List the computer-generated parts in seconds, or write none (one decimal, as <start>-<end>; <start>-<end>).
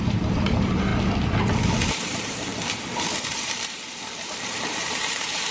0.0-0.9; 1.9-2.5; 3.3-5.5